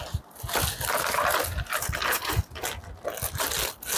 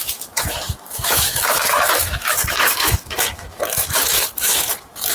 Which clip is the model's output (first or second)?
second